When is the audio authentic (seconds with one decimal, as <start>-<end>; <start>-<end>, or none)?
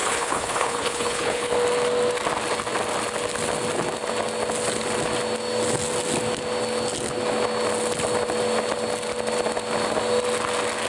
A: 1.5-10.9